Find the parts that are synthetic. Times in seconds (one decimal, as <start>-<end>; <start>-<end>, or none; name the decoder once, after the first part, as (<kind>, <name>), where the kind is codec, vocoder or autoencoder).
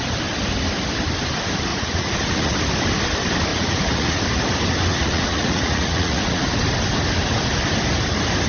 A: 1.7-2.5 (vocoder, Vocos); 3.5-4.2; 4.9-6.4